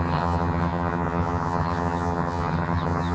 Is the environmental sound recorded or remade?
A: remade